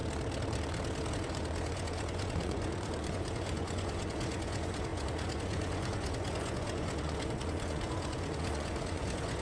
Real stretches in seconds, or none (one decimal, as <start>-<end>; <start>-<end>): 0.0-1.1